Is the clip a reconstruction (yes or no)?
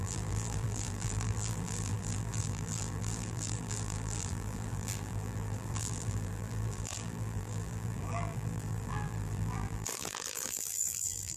yes